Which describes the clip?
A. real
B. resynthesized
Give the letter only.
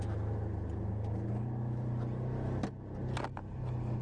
A